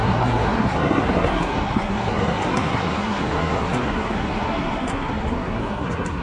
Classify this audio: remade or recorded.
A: remade